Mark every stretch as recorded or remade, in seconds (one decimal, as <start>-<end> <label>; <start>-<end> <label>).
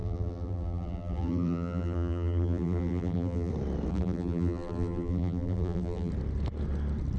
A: 0.0-3.5 remade; 3.5-3.9 recorded; 3.9-6.1 remade; 6.1-7.2 recorded